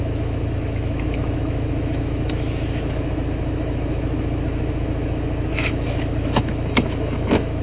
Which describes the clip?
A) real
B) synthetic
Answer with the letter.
B